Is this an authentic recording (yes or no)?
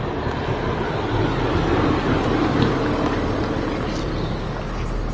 yes